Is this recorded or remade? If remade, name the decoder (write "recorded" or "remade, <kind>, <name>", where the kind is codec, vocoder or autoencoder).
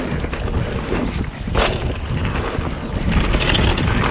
recorded